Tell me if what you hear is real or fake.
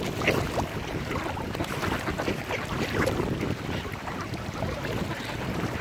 real